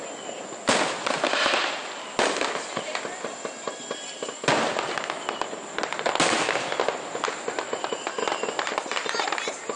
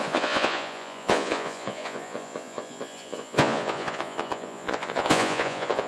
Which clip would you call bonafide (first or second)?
first